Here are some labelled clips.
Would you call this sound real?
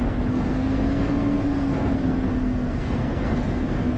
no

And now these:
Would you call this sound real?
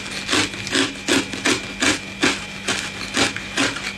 yes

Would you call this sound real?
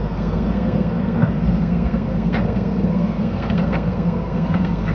no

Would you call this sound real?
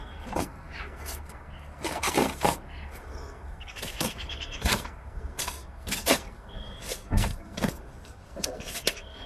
no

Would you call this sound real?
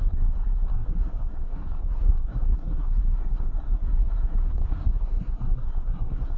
no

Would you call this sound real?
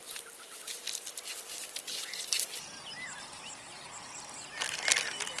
yes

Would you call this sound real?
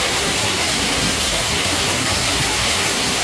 no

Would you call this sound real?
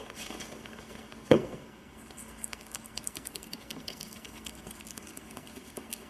no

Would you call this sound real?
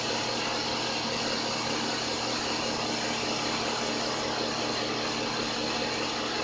yes